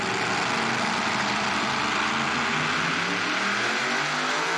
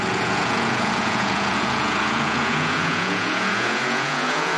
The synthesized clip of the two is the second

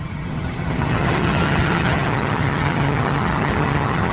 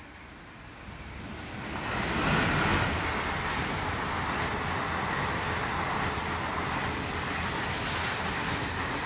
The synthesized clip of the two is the first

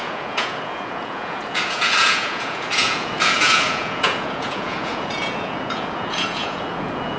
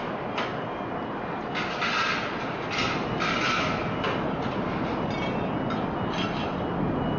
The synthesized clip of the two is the first